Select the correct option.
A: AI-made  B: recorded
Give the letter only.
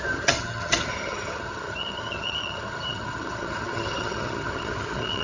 A